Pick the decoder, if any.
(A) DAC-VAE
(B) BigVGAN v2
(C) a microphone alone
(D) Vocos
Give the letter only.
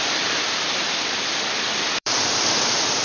B